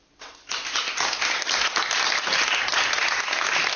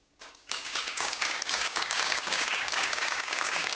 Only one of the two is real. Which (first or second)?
first